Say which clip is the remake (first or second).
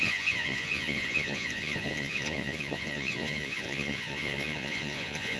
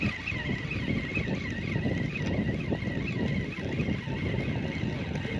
first